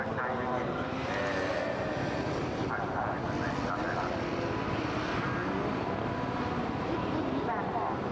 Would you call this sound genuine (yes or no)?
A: yes